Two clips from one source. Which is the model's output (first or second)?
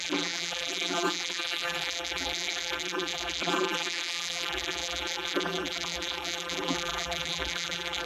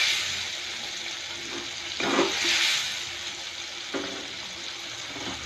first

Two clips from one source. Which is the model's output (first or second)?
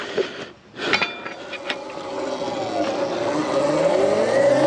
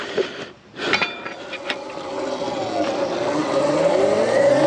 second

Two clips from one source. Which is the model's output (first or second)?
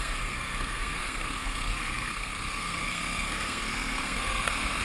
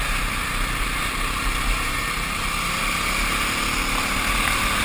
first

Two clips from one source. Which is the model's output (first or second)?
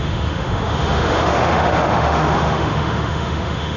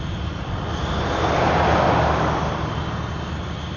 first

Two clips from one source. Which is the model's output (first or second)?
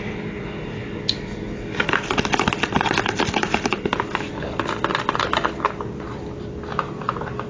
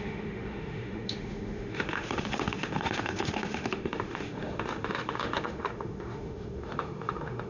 second